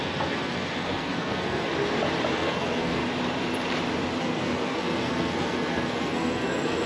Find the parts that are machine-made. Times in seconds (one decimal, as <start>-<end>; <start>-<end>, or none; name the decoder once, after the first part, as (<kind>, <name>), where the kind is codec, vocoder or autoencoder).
0.0-1.7 (codec, SNAC); 2.3-3.0; 4.2-6.9